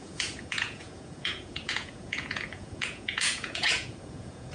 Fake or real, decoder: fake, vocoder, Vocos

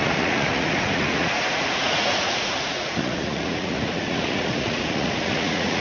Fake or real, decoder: fake, vocoder, Vocos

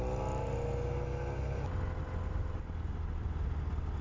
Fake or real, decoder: real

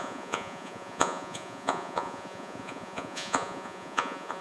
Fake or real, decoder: fake, vocoder, Vocos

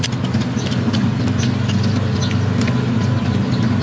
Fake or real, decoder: real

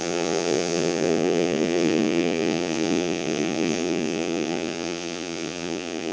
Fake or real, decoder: fake, vocoder, Vocos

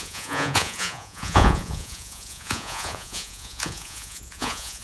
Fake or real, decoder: fake, vocoder, Vocos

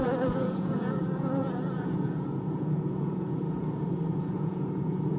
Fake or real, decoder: fake, vocoder, Vocos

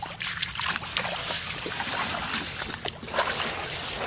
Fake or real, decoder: real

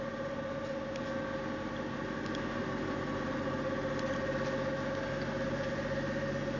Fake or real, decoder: real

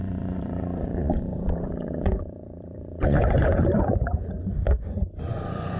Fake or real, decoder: fake, vocoder, Vocos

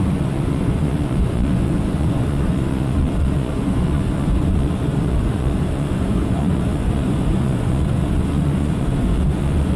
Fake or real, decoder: fake, vocoder, Vocos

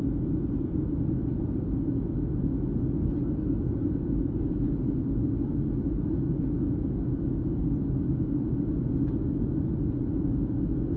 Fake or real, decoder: real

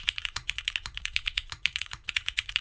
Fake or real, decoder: fake, vocoder, Vocos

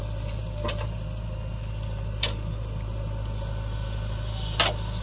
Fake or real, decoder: real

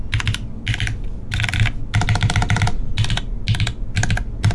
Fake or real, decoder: real